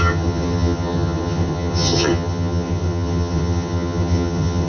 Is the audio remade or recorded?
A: remade